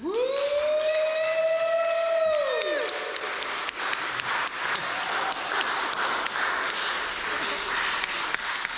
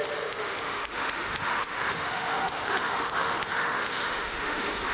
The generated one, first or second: second